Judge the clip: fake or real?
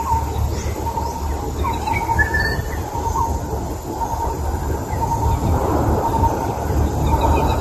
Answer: real